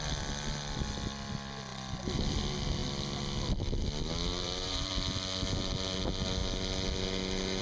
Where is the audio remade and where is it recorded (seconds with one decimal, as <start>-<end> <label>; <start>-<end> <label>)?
0.0-4.3 recorded; 4.3-4.9 remade; 4.9-7.6 recorded